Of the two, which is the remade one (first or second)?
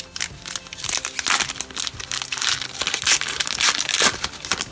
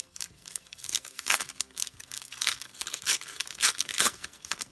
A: second